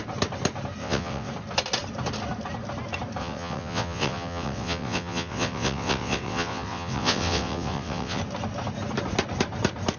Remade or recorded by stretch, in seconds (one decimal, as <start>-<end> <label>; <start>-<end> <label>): 0.0-0.8 recorded; 0.8-1.3 remade; 1.3-3.2 recorded; 3.2-8.2 remade; 8.2-10.0 recorded